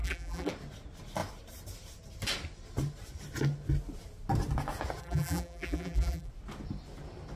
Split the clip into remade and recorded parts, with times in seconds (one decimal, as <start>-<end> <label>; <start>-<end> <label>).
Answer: 0.0-0.5 remade; 0.5-5.0 recorded; 5.0-6.3 remade; 6.3-7.4 recorded